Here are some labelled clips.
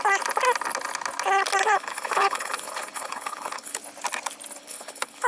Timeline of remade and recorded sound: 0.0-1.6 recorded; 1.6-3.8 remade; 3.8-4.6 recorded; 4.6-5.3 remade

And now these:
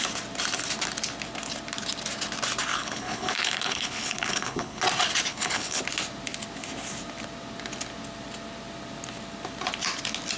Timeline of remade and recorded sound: 0.0-2.7 recorded; 2.7-4.8 remade; 4.8-5.3 recorded; 5.3-5.8 remade; 5.8-10.4 recorded

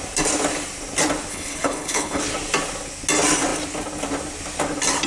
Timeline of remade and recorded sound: 0.0-1.3 recorded; 1.3-2.2 remade; 2.2-5.1 recorded

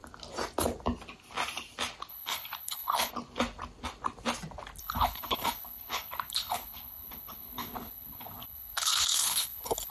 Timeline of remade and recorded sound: 0.0-2.1 recorded; 2.1-3.1 remade; 3.1-4.8 recorded; 4.8-9.9 remade

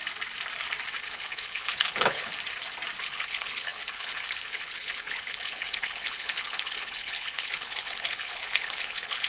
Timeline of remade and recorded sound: 0.0-1.0 recorded; 1.0-2.3 remade; 2.3-3.0 recorded; 3.0-9.3 remade

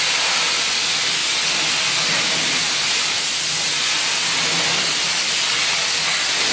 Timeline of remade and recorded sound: 0.0-6.5 recorded

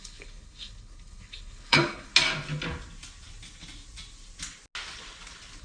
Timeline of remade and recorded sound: 0.0-2.1 remade; 2.1-5.6 recorded

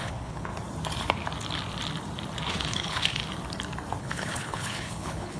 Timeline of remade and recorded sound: 0.0-0.5 remade; 0.5-2.5 recorded; 2.5-3.2 remade; 3.2-4.0 recorded; 4.0-5.4 remade